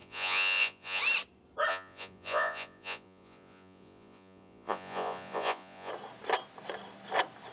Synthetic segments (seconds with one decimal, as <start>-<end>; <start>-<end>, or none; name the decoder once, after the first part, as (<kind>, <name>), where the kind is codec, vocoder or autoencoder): 0.0-1.0 (vocoder, Vocos); 1.7-5.9